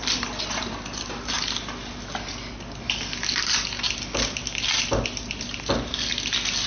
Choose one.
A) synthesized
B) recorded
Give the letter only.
B